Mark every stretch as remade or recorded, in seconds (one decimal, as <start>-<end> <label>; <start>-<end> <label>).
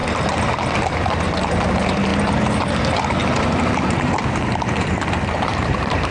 0.0-1.4 recorded; 1.4-2.1 remade; 2.1-3.4 recorded; 3.4-6.1 remade